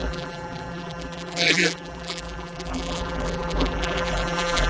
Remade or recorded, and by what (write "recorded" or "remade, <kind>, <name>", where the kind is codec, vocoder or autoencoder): remade, vocoder, BigVGAN v2